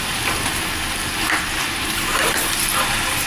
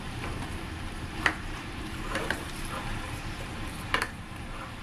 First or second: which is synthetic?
second